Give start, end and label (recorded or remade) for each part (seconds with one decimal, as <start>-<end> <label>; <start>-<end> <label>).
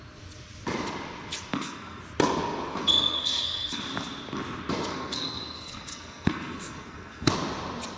0.0-1.5 recorded; 1.5-2.0 remade; 2.0-2.8 recorded; 2.8-3.8 remade; 3.8-4.9 recorded; 4.9-7.3 remade; 7.3-8.0 recorded